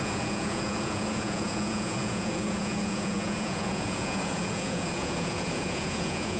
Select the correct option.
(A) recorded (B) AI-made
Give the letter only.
B